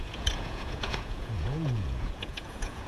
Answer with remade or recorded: remade